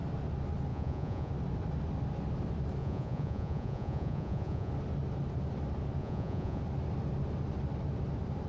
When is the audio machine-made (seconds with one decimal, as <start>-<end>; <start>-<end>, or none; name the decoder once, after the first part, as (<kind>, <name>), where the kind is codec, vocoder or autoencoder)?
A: 0.7-1.3 (vocoder, Vocos); 2.8-4.7; 6.0-6.6